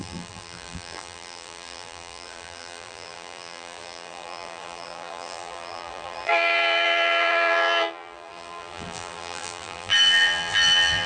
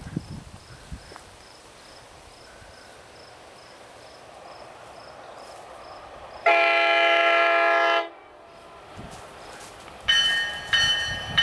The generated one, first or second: first